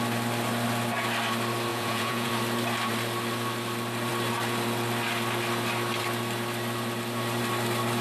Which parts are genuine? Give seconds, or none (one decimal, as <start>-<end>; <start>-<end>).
0.0-1.7; 2.3-8.0